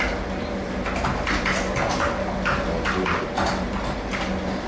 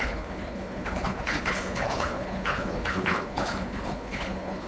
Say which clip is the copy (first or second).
second